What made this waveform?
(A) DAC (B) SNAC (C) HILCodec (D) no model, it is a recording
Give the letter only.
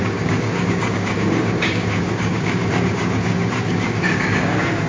A